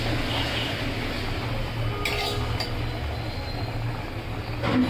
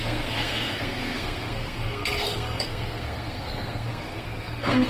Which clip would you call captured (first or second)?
first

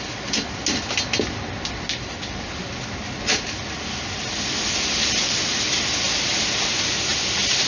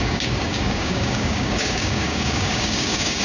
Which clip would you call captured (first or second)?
first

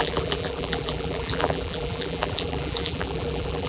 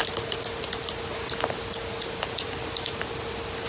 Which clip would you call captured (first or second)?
second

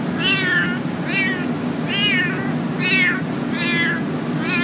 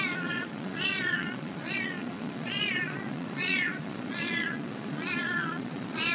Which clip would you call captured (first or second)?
first